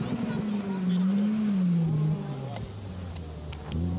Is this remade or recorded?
recorded